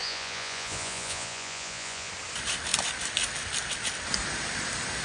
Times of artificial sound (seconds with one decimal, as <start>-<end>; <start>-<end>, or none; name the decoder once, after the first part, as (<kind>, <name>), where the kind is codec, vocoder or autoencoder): 0.0-2.1 (vocoder, Vocos)